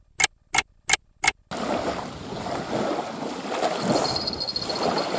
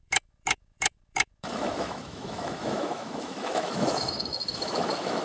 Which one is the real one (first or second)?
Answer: first